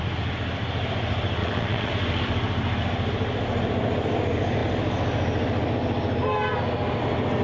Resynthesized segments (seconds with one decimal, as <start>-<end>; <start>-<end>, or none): 1.4-1.9